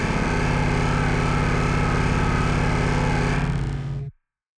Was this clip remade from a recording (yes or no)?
no